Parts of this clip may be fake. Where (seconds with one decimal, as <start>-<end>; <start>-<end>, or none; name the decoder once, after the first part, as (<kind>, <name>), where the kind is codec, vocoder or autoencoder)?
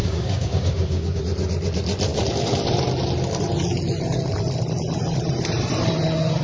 0.0-1.2 (codec, DAC)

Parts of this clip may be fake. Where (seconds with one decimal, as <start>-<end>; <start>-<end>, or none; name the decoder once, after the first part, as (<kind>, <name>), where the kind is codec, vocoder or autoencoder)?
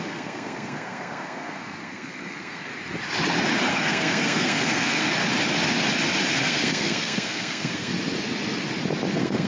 0.0-2.7 (codec, SNAC); 3.7-5.2; 6.4-7.9; 9.1-9.5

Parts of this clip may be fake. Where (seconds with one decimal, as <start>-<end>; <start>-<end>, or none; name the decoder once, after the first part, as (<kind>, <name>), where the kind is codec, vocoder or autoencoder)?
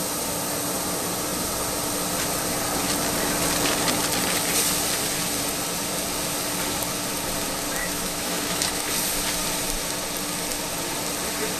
7.8-8.9 (autoencoder, DAC-VAE)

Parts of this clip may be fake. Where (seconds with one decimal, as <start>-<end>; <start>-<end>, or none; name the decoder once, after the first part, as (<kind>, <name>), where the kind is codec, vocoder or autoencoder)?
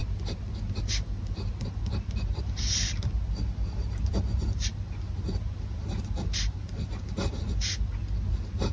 none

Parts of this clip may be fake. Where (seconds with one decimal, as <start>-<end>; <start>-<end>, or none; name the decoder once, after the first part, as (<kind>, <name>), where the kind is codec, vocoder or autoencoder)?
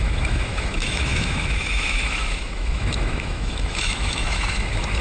0.0-5.0 (autoencoder, DAC-VAE)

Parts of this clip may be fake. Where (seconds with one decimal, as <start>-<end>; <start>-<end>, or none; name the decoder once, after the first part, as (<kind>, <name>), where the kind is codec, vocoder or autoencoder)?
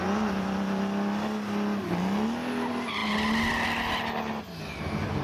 none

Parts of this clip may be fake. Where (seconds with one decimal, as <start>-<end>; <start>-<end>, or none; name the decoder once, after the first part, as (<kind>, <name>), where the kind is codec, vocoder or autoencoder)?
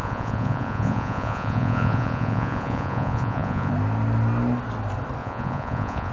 0.0-3.7 (vocoder, Vocos); 5.2-6.1